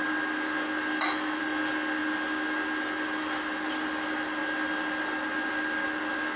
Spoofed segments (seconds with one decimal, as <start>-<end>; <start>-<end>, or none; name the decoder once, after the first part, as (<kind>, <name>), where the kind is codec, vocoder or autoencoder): none